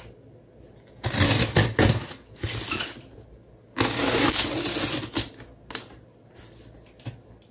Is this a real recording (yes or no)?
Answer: yes